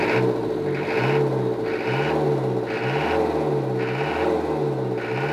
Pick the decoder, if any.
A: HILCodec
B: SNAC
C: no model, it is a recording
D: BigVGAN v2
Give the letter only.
C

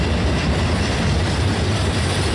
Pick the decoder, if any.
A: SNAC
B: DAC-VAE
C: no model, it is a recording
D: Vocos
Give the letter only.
C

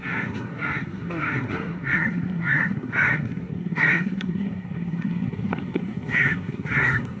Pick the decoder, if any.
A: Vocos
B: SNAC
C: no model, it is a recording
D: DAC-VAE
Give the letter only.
B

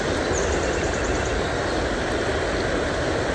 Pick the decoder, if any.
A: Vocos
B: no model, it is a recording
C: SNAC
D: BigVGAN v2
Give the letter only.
B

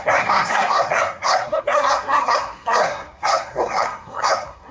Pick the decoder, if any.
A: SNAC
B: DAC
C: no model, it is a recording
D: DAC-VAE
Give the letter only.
A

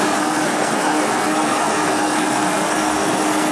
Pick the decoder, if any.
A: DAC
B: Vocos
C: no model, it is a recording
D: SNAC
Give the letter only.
D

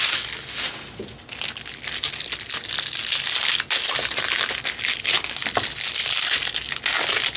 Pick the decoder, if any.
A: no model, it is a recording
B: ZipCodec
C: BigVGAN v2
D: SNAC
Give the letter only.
A